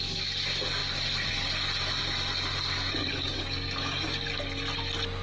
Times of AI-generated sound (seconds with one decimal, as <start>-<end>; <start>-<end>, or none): 3.0-4.1